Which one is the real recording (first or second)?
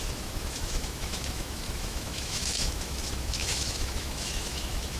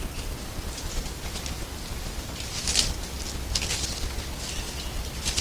second